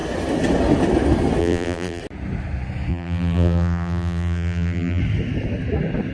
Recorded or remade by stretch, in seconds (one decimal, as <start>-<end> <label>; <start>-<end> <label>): 0.0-1.4 recorded; 1.4-2.0 remade; 2.0-2.9 recorded; 2.9-5.0 remade; 5.0-6.1 recorded